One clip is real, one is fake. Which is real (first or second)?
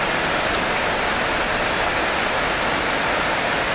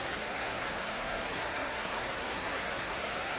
first